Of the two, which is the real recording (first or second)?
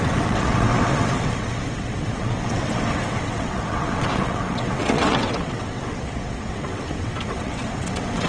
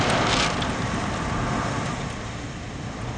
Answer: second